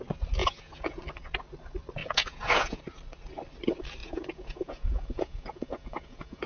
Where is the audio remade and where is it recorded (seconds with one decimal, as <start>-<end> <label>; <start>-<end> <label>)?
0.0-0.4 recorded; 0.4-1.0 remade; 1.0-2.0 recorded; 2.0-2.8 remade; 2.8-4.0 recorded; 4.0-6.5 remade